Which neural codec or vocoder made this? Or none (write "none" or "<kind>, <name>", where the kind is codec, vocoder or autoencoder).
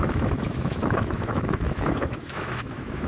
autoencoder, DAC-VAE